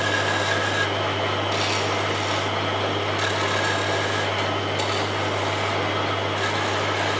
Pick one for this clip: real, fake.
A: real